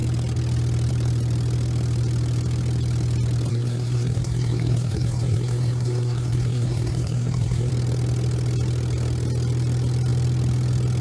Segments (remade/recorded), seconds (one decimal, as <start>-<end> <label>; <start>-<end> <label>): 0.0-3.5 recorded; 3.5-7.7 remade; 7.7-11.0 recorded